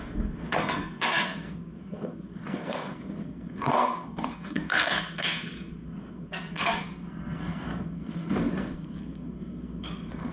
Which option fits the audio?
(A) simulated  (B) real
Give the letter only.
A